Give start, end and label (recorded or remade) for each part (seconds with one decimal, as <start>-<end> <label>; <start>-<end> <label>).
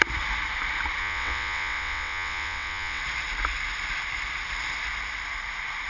0.0-1.0 recorded; 1.0-3.0 remade; 3.0-5.9 recorded